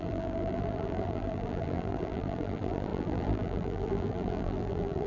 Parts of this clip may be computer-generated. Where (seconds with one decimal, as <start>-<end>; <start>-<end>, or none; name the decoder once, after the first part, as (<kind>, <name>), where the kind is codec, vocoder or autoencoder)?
0.0-5.1 (vocoder, BigVGAN v2)